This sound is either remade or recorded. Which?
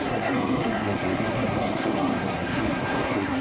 remade